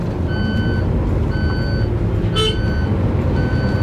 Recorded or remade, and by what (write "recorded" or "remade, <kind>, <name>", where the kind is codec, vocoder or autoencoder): recorded